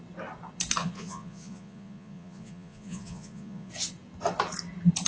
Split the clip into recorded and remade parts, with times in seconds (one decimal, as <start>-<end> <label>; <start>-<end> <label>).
0.0-0.8 recorded; 0.8-3.7 remade; 3.7-5.1 recorded